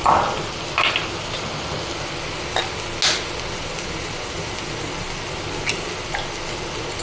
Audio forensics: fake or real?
real